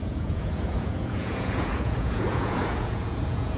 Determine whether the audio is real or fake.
fake